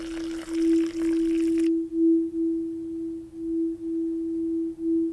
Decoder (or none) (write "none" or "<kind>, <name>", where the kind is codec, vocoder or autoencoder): none